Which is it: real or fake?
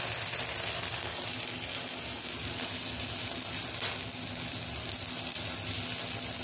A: real